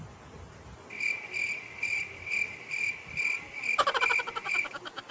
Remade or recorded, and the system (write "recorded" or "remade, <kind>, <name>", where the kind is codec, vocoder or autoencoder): recorded